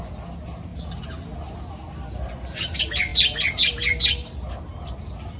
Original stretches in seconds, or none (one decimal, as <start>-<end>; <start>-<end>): 0.0-5.4